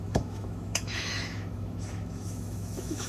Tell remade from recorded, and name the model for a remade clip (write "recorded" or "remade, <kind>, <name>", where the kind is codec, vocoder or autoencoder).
remade, autoencoder, DAC-VAE